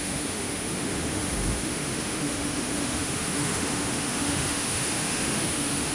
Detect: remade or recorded remade